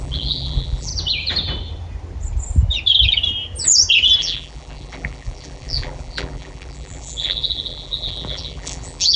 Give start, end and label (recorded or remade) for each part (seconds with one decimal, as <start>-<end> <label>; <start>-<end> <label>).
0.0-0.9 remade; 0.9-4.2 recorded; 4.2-9.2 remade